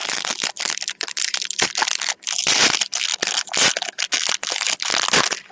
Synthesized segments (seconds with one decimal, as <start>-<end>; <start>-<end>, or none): 0.0-1.7